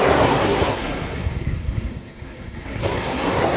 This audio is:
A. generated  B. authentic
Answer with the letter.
A